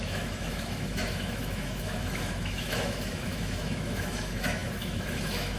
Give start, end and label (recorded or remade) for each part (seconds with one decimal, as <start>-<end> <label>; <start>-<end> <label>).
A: 0.0-5.6 remade